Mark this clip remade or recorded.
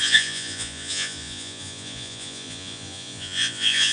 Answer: remade